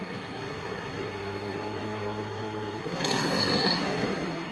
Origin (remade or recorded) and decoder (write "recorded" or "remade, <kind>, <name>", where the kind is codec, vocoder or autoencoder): remade, codec, SNAC